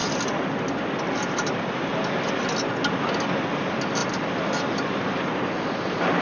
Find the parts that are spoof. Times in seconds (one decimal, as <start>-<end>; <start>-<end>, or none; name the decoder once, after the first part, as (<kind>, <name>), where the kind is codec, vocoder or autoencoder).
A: none